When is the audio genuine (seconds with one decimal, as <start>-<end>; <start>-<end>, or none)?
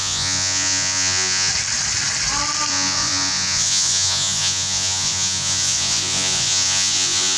1.5-2.7